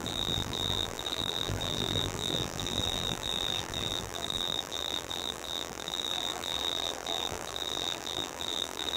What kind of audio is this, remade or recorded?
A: remade